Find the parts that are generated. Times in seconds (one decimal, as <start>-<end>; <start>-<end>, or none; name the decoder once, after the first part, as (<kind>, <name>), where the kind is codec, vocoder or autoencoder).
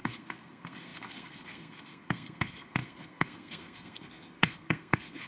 0.0-5.3 (codec, SNAC)